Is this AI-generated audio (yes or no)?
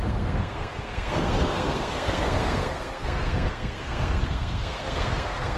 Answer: yes